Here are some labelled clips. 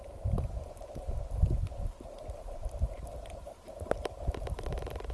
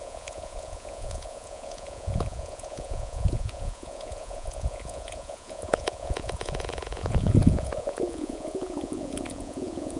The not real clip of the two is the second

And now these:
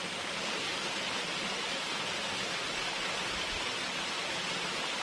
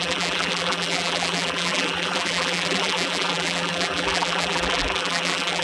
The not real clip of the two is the second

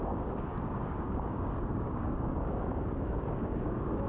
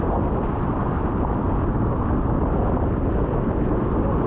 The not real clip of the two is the first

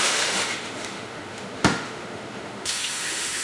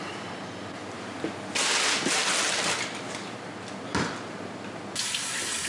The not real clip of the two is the first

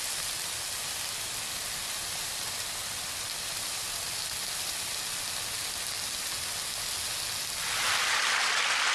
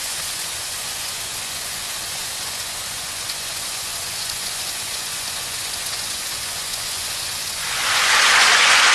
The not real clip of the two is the second